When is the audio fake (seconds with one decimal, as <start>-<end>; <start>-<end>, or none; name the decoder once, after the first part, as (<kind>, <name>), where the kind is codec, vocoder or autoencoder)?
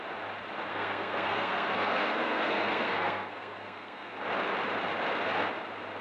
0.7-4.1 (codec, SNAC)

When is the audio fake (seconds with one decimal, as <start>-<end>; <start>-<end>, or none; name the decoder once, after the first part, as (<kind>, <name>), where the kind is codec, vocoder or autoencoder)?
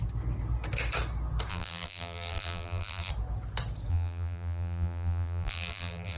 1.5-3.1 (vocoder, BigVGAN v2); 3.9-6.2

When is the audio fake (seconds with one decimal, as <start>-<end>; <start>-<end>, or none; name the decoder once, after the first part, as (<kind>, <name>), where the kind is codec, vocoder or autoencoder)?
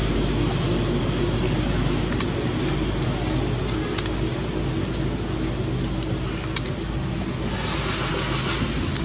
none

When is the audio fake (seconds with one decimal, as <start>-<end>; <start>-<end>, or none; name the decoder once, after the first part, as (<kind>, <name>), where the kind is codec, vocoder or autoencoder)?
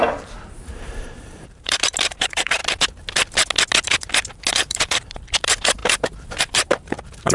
0.0-2.6 (vocoder, BigVGAN v2); 4.5-7.3